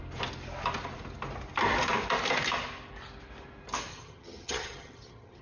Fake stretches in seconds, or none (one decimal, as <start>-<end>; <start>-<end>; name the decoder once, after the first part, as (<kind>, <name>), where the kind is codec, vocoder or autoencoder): 3.9-5.4 (vocoder, HiFi-GAN)

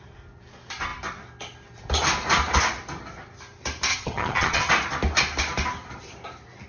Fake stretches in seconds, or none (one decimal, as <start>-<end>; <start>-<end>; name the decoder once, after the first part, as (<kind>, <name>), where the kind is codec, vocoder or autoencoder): 3.9-4.7 (vocoder, HiFi-GAN)